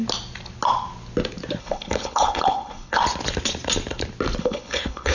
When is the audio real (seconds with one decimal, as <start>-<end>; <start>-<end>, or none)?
0.0-1.6; 3.0-4.4